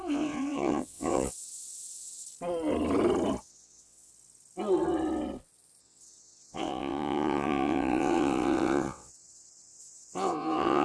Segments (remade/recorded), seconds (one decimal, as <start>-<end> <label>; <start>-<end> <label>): 0.0-2.2 remade; 2.2-3.4 recorded; 3.4-4.1 remade; 4.1-5.8 recorded; 5.8-10.8 remade